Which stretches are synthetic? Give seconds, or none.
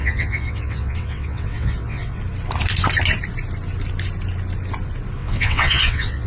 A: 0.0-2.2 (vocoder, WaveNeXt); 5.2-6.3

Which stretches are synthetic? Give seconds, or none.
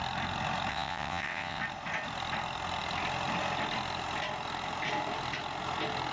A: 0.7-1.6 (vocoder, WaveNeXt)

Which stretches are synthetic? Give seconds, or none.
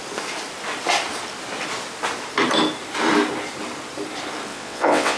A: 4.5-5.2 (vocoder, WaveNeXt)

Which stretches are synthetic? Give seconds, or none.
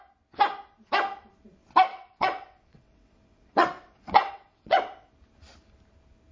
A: 1.9-5.1 (vocoder, WaveNeXt)